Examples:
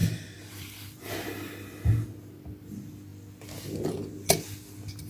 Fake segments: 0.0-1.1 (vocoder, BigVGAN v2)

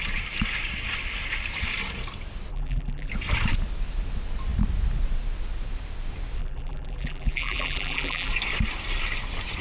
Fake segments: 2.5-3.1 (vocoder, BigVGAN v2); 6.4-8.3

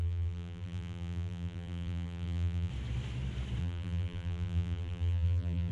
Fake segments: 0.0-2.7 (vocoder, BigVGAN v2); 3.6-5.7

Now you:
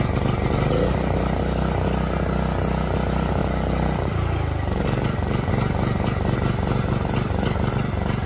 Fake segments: 3.4-5.5 (vocoder, BigVGAN v2)

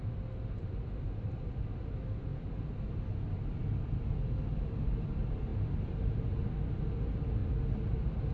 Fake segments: none

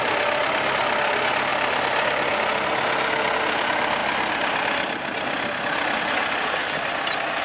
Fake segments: none

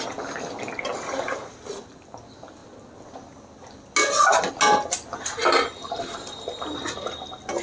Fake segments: 0.9-1.5 (vocoder, BigVGAN v2)

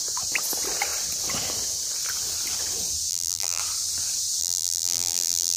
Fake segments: 3.1-3.6 (vocoder, BigVGAN v2); 4.4-5.6